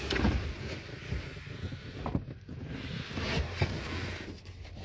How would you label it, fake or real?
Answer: real